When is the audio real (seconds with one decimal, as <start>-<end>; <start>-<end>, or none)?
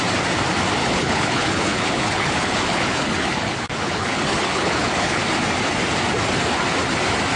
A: 0.0-0.8; 5.2-7.4